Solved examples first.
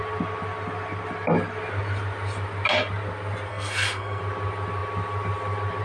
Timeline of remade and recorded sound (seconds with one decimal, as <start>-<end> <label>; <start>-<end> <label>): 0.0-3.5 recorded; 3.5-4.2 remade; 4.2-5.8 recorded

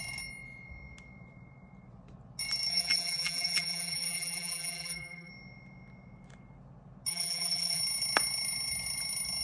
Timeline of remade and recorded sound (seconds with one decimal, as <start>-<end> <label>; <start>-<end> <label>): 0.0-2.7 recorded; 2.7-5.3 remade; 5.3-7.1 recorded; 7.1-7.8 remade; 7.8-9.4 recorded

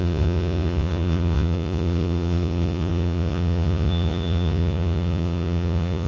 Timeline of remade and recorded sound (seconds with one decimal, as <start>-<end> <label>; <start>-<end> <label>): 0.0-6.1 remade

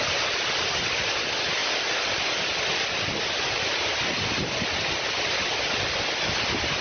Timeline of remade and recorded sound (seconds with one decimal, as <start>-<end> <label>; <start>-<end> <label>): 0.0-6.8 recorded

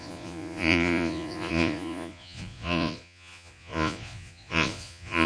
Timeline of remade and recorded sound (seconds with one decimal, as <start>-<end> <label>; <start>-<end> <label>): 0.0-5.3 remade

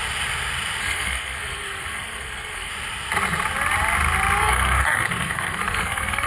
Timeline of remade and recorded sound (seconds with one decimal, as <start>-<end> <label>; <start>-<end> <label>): 0.0-0.8 recorded; 0.8-2.7 remade; 2.7-4.4 recorded; 4.4-6.3 remade